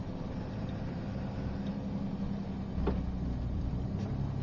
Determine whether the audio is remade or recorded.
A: recorded